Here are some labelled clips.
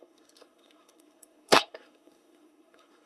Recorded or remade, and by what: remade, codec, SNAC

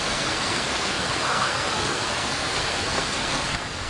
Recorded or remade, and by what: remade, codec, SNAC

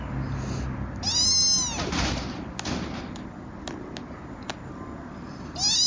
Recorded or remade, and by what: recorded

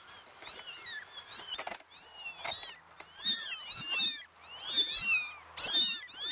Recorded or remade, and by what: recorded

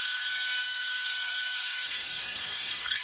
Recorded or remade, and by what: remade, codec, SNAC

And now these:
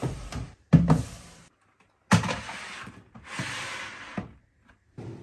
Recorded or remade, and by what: recorded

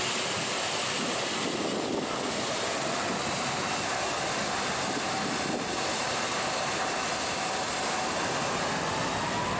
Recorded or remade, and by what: recorded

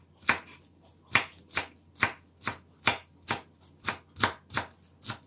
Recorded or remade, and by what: recorded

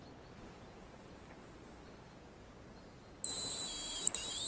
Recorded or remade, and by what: recorded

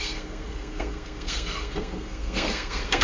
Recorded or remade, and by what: remade, codec, SNAC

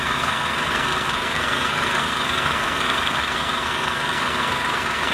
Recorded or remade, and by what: remade, codec, SNAC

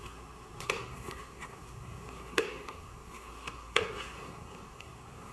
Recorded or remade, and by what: remade, codec, SNAC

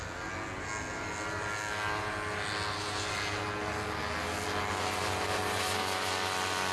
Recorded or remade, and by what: recorded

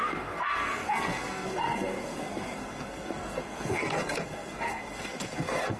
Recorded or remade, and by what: remade, codec, SNAC